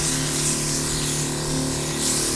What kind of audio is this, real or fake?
real